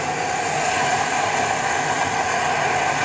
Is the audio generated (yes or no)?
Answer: no